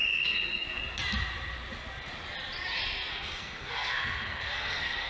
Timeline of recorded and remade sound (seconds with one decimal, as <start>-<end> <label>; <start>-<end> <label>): 0.0-0.8 remade; 0.8-3.1 recorded; 3.1-5.1 remade